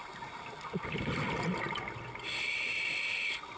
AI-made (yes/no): no